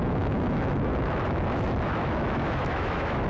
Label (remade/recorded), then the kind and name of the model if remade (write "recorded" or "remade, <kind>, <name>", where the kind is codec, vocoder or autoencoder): remade, autoencoder, DAC-VAE